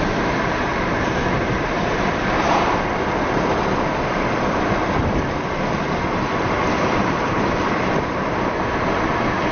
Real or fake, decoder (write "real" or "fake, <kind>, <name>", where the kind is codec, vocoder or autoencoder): fake, vocoder, BigVGAN v2